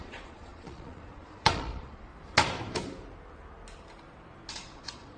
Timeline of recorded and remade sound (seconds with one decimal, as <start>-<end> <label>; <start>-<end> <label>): 0.0-2.1 remade; 2.1-4.5 recorded; 4.5-5.2 remade